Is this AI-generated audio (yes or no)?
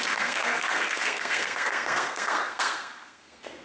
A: yes